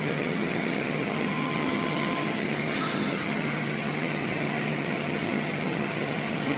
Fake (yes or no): yes